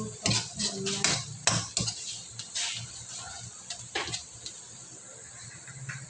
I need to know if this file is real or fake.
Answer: real